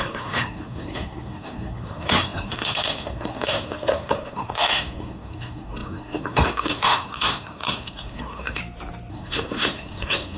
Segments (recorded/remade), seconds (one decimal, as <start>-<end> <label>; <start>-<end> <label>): 0.0-8.6 remade; 8.6-9.1 recorded; 9.1-10.4 remade